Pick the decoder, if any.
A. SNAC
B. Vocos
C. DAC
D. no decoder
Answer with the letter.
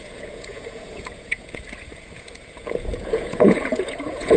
B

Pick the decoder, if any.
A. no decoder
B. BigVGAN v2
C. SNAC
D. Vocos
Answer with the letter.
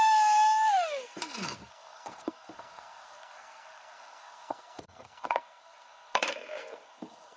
C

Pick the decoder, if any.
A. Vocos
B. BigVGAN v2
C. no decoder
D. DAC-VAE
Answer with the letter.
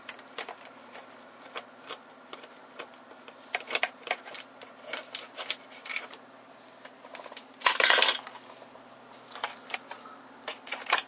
B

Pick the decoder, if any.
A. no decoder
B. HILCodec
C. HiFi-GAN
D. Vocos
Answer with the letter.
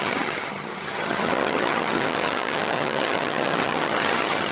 C